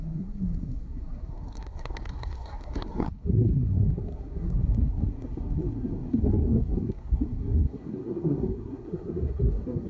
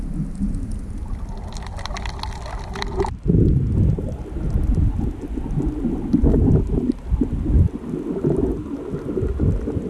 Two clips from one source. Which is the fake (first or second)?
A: first